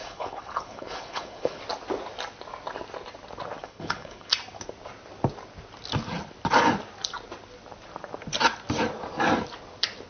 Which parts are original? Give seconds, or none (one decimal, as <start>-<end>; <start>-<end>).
1.6-3.6; 4.3-10.1